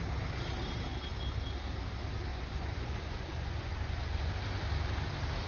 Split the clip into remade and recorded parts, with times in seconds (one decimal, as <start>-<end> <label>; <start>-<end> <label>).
0.0-2.3 recorded; 2.3-4.3 remade; 4.3-5.5 recorded

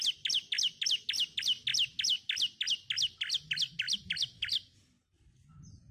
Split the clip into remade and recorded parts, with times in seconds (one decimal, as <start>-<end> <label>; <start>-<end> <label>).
0.0-5.9 recorded

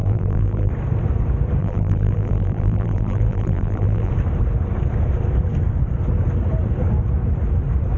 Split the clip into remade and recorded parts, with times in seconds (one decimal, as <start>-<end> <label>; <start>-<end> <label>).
0.0-0.7 remade; 0.7-1.6 recorded; 1.6-4.1 remade; 4.1-8.0 recorded

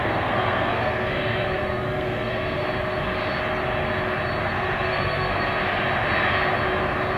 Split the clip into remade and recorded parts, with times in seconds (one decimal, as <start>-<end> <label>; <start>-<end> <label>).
0.0-2.6 remade; 2.6-4.4 recorded; 4.4-5.6 remade; 5.6-7.2 recorded

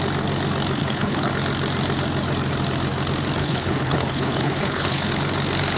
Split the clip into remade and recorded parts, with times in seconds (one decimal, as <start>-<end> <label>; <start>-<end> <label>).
0.0-0.8 recorded; 0.8-1.3 remade; 1.3-3.4 recorded; 3.4-5.1 remade; 5.1-5.8 recorded

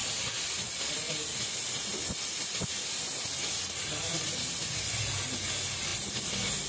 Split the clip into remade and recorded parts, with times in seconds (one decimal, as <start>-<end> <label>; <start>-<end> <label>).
0.0-6.7 recorded